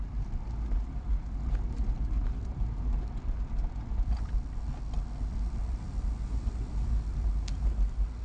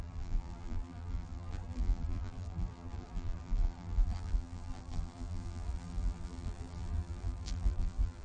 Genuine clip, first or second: first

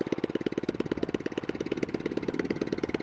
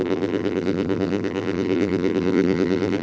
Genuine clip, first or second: first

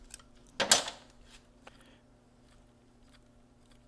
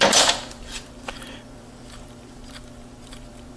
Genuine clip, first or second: first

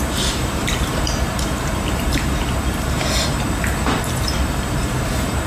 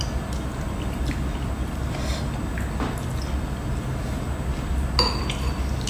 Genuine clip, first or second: second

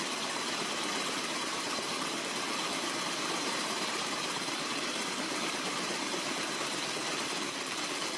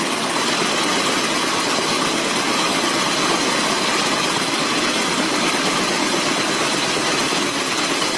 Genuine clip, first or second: second